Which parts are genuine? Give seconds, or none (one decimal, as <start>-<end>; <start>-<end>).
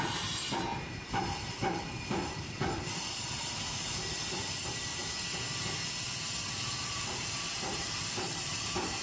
none